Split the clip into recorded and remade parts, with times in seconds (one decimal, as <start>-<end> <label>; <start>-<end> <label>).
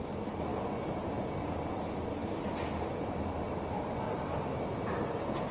0.0-5.5 recorded